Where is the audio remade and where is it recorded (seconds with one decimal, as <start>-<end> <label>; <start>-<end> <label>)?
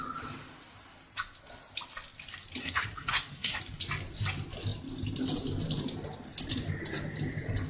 0.0-2.6 recorded; 2.6-3.6 remade; 3.6-7.7 recorded